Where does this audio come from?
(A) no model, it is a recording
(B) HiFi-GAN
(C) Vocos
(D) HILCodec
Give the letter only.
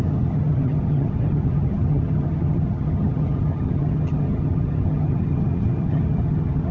B